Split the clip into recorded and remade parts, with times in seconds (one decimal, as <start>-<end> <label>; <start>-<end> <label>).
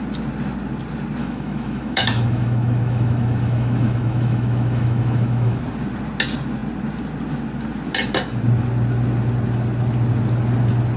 0.0-1.2 recorded; 1.2-5.6 remade; 5.6-11.0 recorded